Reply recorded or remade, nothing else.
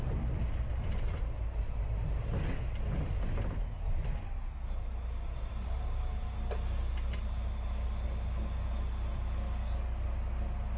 recorded